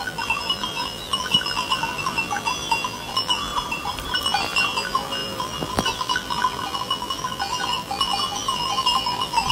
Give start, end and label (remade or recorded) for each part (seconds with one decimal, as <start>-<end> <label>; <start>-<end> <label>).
0.0-3.5 remade; 3.5-4.2 recorded; 4.2-9.5 remade